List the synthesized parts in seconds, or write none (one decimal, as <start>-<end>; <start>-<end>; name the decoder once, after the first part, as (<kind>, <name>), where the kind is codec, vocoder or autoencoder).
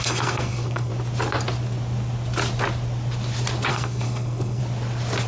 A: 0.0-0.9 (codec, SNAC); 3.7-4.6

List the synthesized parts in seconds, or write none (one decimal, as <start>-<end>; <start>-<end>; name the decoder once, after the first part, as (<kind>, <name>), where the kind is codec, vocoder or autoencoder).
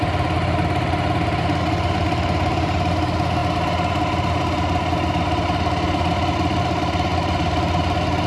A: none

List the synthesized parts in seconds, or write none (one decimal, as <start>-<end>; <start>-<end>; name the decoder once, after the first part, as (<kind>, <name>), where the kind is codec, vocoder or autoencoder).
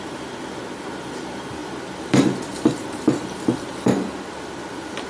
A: none